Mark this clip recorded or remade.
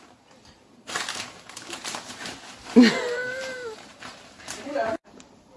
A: remade